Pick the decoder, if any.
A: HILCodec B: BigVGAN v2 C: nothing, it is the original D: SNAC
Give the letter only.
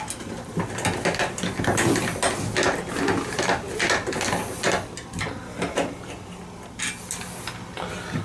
C